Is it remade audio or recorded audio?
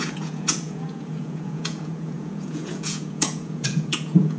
remade